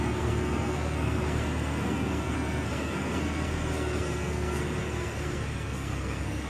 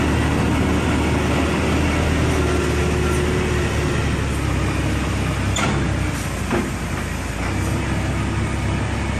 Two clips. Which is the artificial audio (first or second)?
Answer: first